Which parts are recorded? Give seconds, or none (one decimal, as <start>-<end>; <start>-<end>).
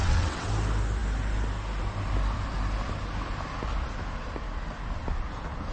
0.5-5.7